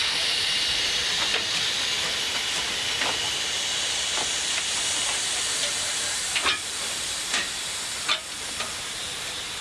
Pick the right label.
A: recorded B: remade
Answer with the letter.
A